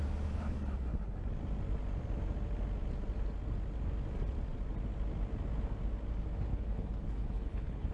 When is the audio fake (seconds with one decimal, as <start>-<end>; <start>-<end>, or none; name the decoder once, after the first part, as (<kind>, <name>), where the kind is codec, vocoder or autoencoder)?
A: 6.5-7.9 (codec, HILCodec)